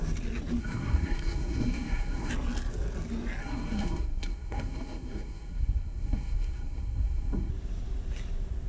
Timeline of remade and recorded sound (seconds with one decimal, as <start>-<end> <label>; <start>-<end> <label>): 0.0-0.6 recorded; 0.6-2.3 remade; 2.3-3.4 recorded; 3.4-7.5 remade; 7.5-8.7 recorded